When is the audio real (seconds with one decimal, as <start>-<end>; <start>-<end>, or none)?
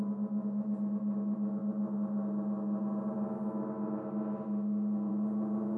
0.0-5.8